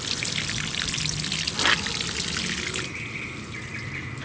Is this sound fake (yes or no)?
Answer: no